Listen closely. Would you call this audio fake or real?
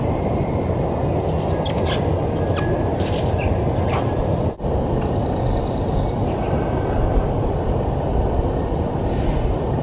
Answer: real